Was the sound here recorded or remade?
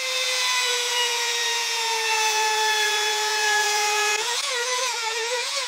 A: remade